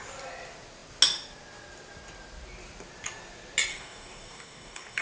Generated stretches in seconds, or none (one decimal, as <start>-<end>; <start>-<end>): 3.7-5.0